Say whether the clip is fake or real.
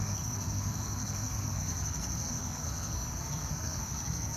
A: fake